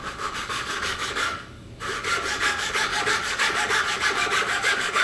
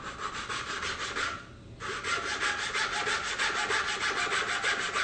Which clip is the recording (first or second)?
second